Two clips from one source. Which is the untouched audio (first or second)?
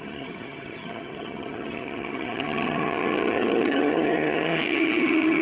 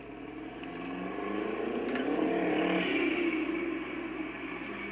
second